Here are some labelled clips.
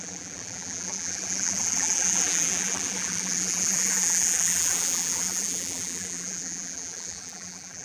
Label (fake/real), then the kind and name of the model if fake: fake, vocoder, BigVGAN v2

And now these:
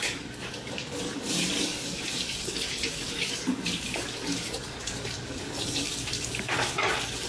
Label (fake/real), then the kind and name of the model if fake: fake, codec, DAC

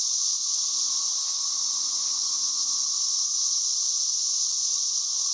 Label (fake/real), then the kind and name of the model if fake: fake, vocoder, Vocos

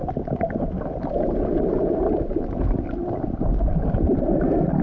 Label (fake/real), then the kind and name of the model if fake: real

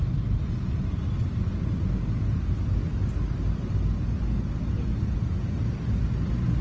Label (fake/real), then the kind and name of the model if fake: real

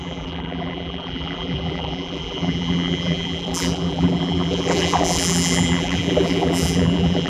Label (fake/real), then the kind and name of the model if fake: fake, vocoder, BigVGAN v2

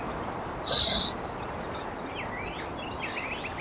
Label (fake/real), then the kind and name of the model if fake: real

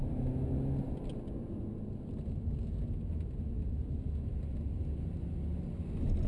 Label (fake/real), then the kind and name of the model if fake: real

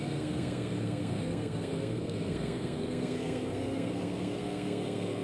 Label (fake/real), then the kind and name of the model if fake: fake, codec, SNAC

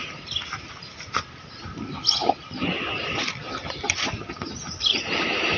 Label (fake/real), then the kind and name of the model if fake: real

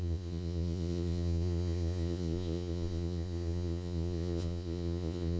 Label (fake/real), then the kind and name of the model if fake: fake, vocoder, Vocos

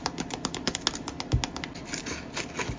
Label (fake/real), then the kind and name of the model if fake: real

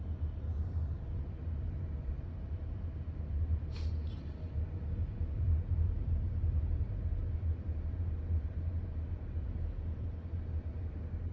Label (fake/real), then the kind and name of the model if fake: fake, vocoder, BigVGAN v2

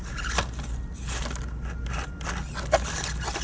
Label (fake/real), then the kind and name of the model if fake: real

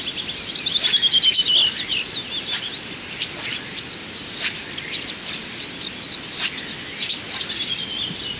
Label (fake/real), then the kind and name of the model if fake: real